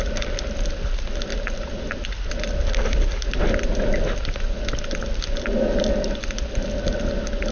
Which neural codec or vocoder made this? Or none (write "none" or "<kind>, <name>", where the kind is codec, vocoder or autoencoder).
none